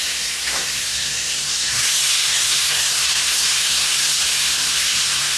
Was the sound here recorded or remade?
remade